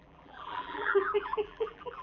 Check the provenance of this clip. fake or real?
fake